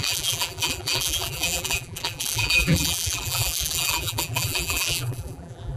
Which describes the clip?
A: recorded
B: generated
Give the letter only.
B